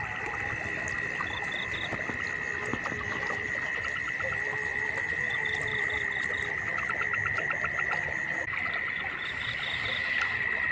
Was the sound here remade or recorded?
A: recorded